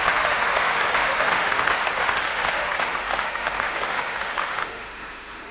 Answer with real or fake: fake